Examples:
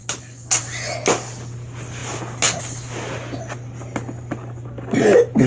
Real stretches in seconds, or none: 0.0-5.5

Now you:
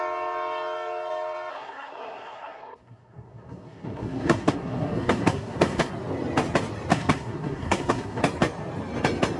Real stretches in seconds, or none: 0.0-1.5; 5.9-6.9; 8.2-9.4

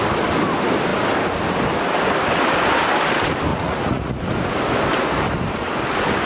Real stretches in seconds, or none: 0.0-3.5; 4.2-6.3

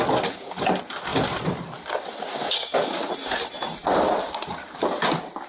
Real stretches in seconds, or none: 0.0-1.1; 1.6-5.5

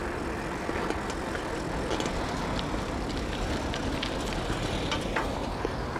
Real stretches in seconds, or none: 0.0-6.0

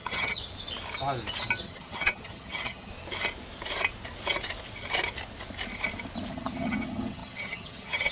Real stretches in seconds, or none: 0.4-1.6; 2.9-6.3